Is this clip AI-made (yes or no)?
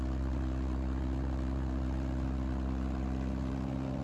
no